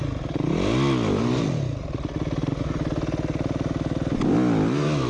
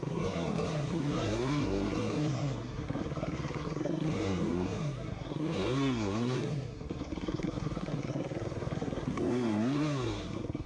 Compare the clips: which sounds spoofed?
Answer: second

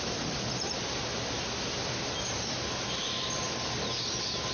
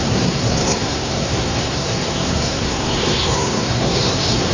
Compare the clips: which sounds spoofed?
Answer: second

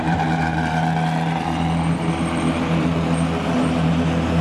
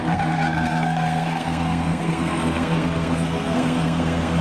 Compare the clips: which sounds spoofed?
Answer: second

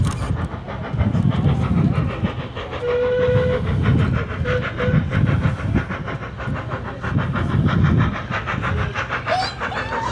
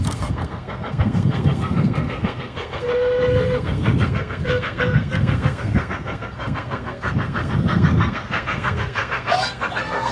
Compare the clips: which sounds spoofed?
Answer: second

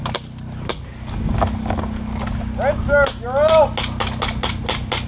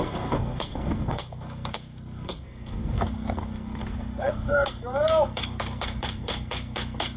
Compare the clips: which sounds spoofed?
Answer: second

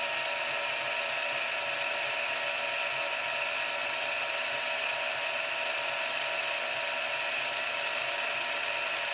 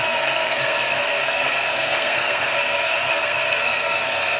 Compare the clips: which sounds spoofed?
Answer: second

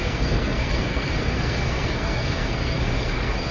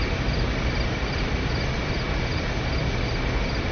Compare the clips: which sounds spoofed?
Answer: first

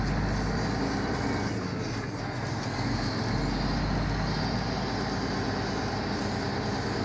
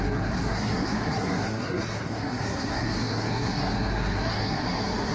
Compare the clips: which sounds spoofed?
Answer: second